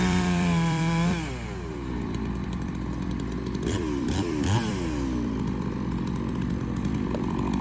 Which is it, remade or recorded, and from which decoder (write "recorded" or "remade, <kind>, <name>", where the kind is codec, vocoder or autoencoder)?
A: remade, vocoder, BigVGAN v2